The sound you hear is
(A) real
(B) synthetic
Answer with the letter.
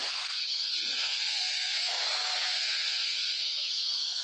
B